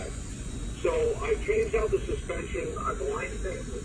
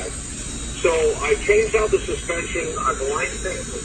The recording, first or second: second